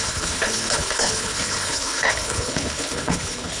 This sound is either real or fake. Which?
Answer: fake